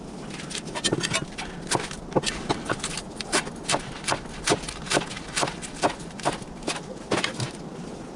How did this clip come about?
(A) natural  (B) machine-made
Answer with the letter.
A